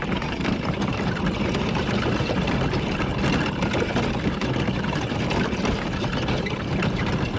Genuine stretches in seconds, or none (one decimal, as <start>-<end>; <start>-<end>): 3.1-4.5